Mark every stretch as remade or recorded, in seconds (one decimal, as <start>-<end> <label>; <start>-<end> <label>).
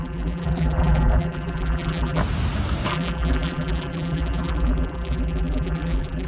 0.0-2.2 remade; 2.2-2.9 recorded; 2.9-6.3 remade